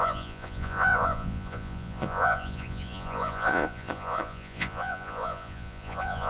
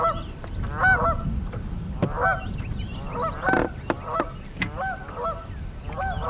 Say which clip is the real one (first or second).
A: second